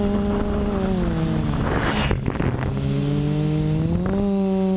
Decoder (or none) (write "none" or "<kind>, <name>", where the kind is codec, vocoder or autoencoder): none